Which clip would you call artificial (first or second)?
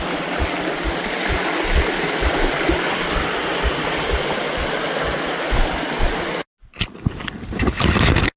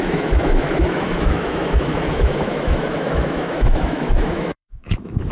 second